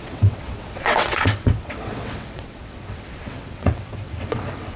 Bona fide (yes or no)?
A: no